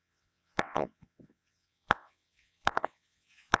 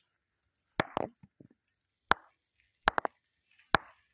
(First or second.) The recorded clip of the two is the second